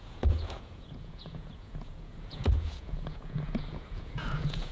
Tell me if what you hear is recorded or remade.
remade